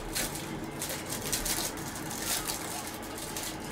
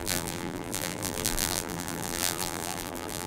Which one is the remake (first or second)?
second